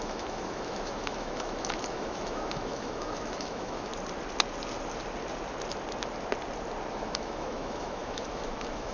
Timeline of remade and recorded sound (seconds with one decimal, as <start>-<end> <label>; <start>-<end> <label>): 0.0-3.9 remade; 3.9-6.9 recorded; 6.9-8.9 remade